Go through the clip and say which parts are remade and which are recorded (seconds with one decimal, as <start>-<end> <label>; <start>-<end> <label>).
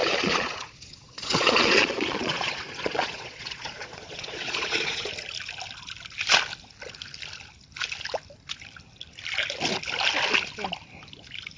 0.0-5.1 remade; 5.1-11.6 recorded